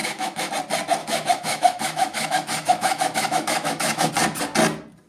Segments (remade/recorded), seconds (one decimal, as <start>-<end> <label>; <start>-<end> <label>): 0.0-0.5 remade; 0.5-1.0 recorded; 1.0-4.1 remade; 4.1-5.1 recorded